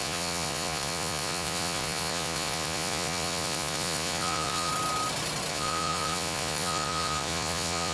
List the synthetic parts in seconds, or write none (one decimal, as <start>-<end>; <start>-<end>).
0.0-4.7; 5.5-7.9